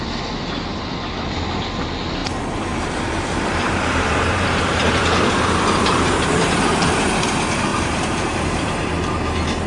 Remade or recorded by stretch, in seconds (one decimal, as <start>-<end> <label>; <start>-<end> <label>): 0.0-2.2 recorded; 2.2-7.1 remade; 7.1-7.7 recorded; 7.7-9.0 remade; 9.0-9.7 recorded